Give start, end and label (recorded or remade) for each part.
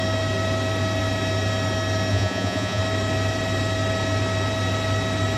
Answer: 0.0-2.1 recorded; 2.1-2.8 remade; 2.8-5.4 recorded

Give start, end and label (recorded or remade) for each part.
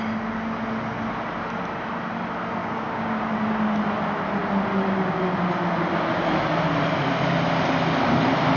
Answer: 0.0-2.6 recorded; 2.6-3.2 remade; 3.2-8.6 recorded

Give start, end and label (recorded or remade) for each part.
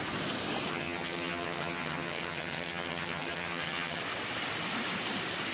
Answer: 0.0-0.7 recorded; 0.7-4.0 remade; 4.0-5.5 recorded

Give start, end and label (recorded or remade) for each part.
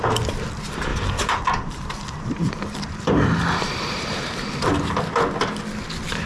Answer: 0.0-0.9 recorded; 0.9-4.7 remade; 4.7-6.3 recorded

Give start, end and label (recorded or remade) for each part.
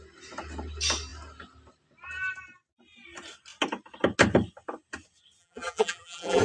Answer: 0.0-5.4 recorded; 5.4-6.4 remade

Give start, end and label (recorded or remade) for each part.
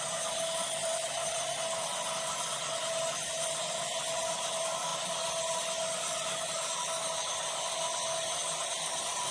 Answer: 0.0-9.3 recorded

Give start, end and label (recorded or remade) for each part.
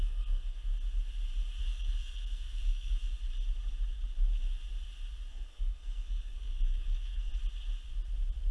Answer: 0.0-0.7 remade; 0.7-1.6 recorded; 1.6-3.2 remade; 3.2-5.3 recorded; 5.3-7.3 remade; 7.3-8.5 recorded